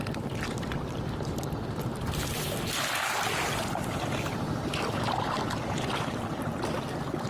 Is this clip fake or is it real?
real